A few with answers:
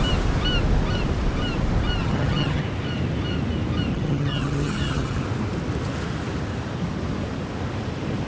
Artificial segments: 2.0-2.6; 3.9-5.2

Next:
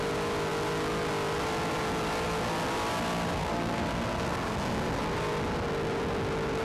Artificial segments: 3.4-5.0